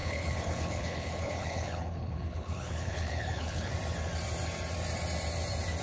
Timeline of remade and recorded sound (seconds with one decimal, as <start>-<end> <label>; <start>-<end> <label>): 0.0-3.7 remade; 3.7-5.8 recorded